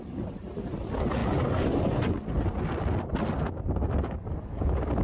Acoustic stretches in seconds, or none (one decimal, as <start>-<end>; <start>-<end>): 0.0-5.0